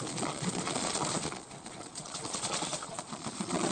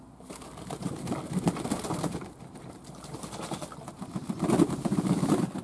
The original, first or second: second